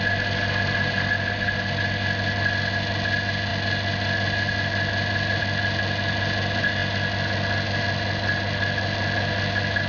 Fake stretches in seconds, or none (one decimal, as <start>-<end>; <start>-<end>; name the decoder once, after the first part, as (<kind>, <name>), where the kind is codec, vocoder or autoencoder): none